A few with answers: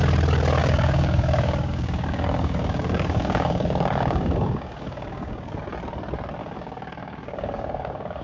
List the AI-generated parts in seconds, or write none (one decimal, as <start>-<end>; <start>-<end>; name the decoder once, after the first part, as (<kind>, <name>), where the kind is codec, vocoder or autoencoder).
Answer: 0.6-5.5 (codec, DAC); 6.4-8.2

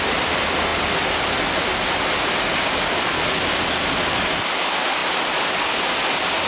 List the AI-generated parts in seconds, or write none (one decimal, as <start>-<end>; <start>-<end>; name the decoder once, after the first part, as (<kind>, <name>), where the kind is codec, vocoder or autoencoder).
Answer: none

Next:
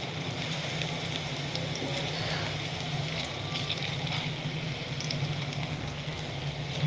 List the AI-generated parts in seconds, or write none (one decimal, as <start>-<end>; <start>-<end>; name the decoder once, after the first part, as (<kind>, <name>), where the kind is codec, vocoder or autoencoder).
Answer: 5.6-6.3 (codec, SNAC)

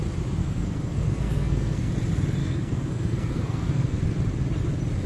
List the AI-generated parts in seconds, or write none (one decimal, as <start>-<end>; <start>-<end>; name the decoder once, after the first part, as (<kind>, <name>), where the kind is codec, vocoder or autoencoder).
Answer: 0.4-1.9 (codec, SNAC); 2.4-4.0